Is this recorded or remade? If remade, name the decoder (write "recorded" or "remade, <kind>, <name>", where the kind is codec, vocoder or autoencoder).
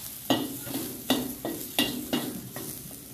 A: recorded